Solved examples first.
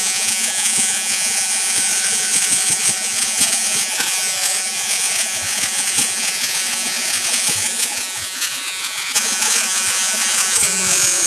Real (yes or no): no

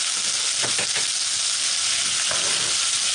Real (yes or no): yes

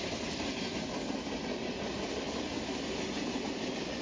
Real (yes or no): yes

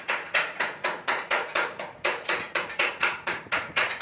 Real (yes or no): no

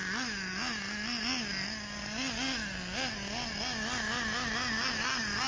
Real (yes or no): yes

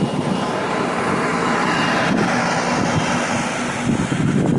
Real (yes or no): yes